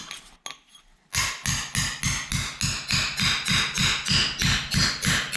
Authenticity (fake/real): real